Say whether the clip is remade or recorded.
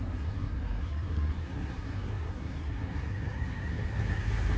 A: remade